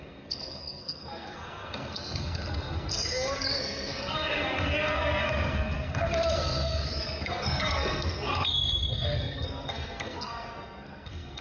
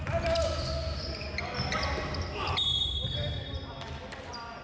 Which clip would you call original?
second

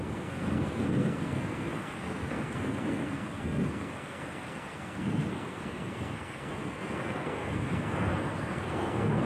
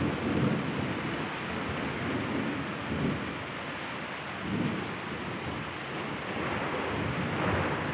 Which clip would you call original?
second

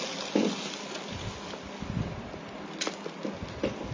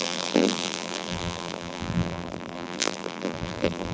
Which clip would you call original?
first